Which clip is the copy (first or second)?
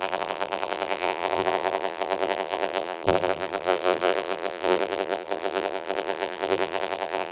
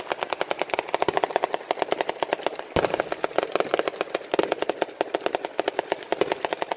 first